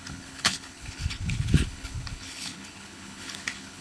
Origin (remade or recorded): remade